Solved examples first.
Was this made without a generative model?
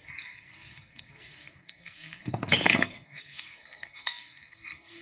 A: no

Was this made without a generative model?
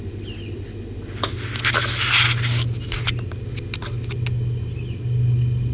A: yes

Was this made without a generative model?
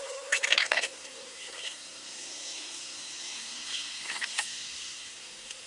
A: no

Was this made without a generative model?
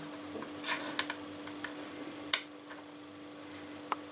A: yes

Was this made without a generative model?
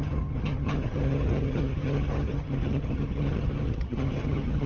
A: no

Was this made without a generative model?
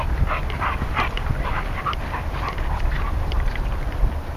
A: yes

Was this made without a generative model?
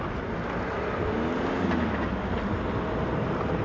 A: yes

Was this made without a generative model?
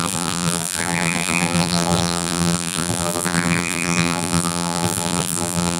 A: no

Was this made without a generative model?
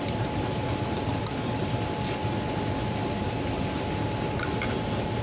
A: yes